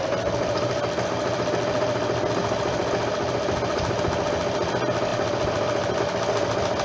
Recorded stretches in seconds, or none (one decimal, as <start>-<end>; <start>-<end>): 0.0-6.8